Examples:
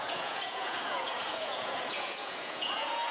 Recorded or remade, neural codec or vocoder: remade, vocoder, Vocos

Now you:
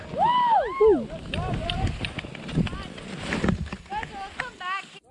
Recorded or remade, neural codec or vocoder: recorded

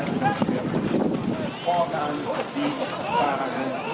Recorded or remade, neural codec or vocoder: recorded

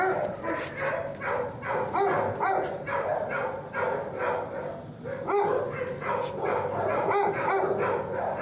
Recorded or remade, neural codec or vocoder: recorded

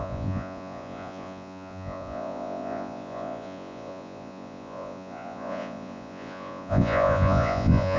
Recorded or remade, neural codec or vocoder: remade, vocoder, Vocos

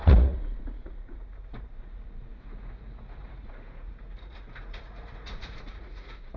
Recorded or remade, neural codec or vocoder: remade, vocoder, Vocos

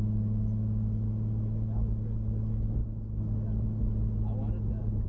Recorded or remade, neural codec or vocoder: recorded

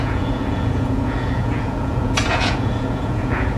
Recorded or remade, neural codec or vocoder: remade, vocoder, Vocos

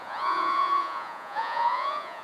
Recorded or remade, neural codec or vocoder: remade, vocoder, Vocos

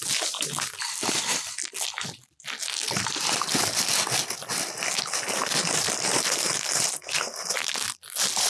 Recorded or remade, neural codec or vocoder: recorded